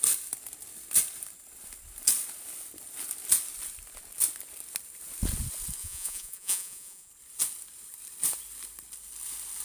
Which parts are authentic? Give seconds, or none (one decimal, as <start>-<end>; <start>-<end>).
0.0-5.8; 7.1-9.6